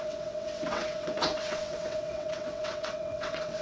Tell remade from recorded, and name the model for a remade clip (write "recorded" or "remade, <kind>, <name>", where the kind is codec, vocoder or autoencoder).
remade, vocoder, WaveNeXt